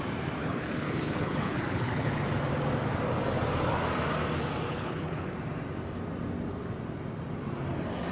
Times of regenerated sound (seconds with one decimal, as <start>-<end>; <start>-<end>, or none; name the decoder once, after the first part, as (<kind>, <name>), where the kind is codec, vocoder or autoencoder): 0.4-2.2 (codec, HILCodec); 4.7-5.3